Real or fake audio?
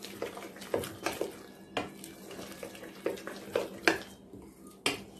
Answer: real